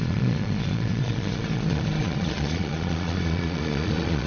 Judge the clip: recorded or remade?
remade